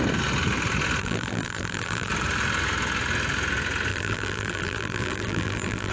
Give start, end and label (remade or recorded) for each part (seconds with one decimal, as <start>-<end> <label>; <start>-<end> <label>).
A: 0.0-1.0 recorded; 1.0-2.1 remade; 2.1-3.9 recorded; 3.9-5.9 remade